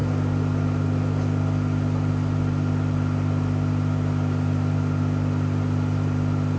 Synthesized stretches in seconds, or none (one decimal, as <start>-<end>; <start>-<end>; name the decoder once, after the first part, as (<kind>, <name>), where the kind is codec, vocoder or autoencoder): none